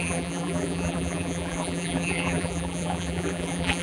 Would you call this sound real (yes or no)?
no